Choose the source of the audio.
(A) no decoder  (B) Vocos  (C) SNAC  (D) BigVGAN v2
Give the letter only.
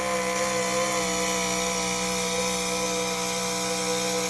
A